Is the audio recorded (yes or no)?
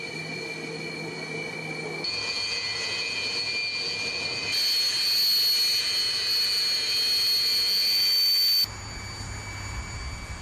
yes